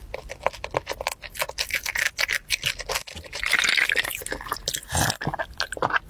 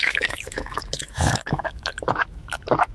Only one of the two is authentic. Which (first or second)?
first